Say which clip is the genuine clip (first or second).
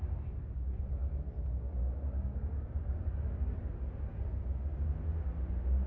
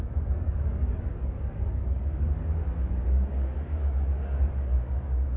first